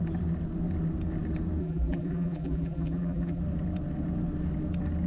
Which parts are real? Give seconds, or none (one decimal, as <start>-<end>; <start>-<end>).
0.0-1.6; 3.4-5.1